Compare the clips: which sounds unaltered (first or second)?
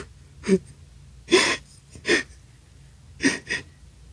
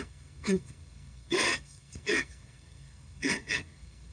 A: first